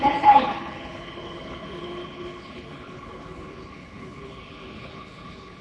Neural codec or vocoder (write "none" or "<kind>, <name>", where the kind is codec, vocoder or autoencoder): codec, HILCodec